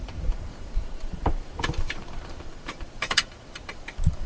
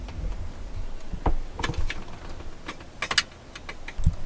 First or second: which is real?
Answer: second